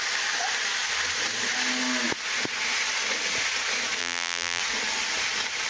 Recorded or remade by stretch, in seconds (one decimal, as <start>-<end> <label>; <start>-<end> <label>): 0.0-4.0 recorded; 4.0-4.6 remade; 4.6-5.7 recorded